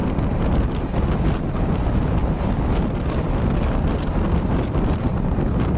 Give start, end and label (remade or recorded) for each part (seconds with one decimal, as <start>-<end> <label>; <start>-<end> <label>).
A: 0.0-5.8 recorded

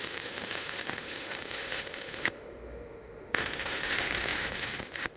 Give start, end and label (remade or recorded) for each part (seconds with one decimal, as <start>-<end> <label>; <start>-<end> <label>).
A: 0.0-5.2 remade

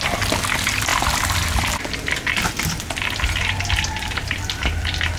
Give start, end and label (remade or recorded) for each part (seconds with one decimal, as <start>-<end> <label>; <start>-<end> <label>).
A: 0.0-5.2 recorded

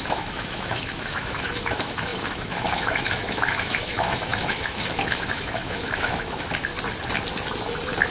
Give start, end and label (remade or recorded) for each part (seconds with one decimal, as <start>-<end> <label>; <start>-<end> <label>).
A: 0.0-6.7 remade; 6.7-8.1 recorded